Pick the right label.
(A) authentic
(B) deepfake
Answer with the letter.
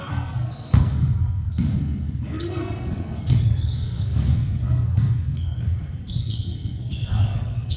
B